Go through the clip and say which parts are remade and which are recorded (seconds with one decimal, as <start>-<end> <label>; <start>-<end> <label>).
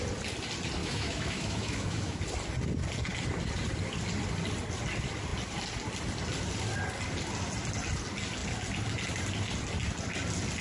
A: 0.0-0.8 recorded; 0.8-2.2 remade; 2.2-10.6 recorded